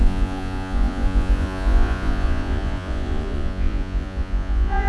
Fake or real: fake